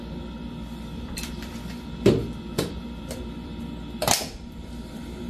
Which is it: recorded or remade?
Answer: remade